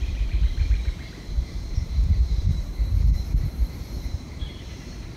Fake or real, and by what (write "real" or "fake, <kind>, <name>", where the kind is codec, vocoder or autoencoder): fake, vocoder, BigVGAN v2